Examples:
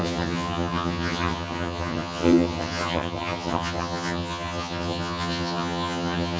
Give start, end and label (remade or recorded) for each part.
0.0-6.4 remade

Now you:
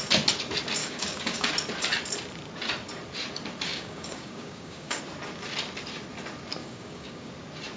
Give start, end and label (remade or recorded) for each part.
0.0-0.8 recorded; 0.8-1.5 remade; 1.5-3.7 recorded; 3.7-5.0 remade; 5.0-6.6 recorded; 6.6-7.3 remade; 7.3-7.8 recorded

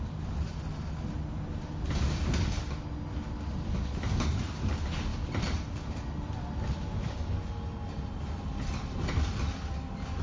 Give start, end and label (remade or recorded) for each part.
0.0-10.2 recorded